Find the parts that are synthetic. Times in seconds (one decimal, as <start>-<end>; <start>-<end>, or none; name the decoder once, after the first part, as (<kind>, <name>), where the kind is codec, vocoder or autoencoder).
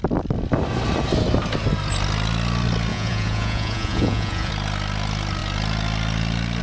2.9-4.5 (vocoder, Vocos)